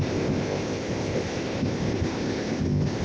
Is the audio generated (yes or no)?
yes